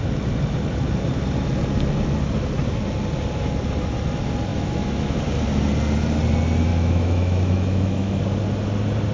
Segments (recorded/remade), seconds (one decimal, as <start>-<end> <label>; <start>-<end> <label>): 0.0-4.5 recorded; 4.5-5.2 remade; 5.2-6.7 recorded; 6.7-8.2 remade; 8.2-9.1 recorded